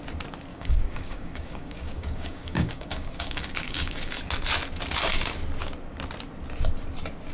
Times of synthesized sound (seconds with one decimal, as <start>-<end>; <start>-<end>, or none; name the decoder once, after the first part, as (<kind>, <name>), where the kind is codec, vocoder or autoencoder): 0.5-4.2 (codec, DAC)